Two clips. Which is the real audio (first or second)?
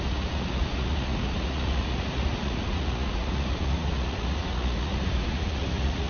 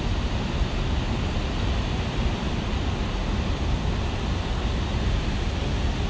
second